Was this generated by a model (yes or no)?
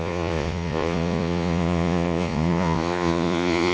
yes